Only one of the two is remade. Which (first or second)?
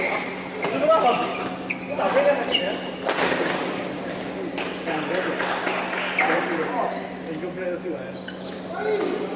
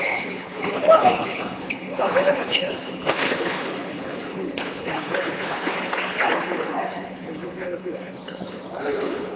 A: second